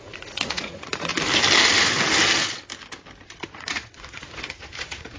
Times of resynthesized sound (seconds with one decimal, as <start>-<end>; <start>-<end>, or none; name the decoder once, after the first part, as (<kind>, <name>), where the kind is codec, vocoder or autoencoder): 0.0-1.1 (vocoder, Vocos); 3.5-5.2

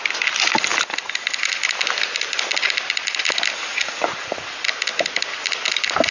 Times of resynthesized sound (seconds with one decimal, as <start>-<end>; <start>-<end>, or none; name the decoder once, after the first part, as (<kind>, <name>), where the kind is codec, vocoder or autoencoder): 3.7-4.5 (vocoder, Vocos)

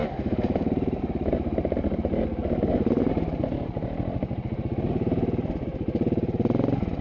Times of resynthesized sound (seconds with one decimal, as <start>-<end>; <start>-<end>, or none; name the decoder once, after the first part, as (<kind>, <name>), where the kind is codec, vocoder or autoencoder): 0.0-2.7 (vocoder, BigVGAN v2)

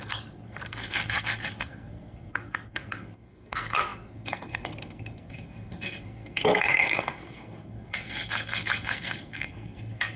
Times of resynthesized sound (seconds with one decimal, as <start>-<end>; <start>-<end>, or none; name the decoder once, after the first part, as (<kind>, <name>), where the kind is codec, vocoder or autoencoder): 0.0-10.2 (codec, SNAC)

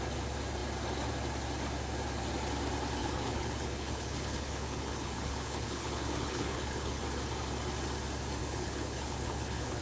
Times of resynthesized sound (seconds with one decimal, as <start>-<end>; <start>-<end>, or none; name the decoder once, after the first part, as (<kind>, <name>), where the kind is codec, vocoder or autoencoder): 3.0-7.0 (codec, HILCodec); 8.4-9.8

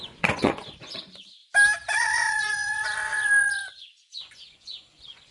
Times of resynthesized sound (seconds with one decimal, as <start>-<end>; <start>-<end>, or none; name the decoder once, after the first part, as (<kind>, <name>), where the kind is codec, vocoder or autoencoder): 0.0-1.4 (vocoder, Vocos); 1.9-5.3